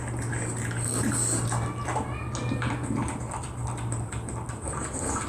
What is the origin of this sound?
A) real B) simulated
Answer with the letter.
A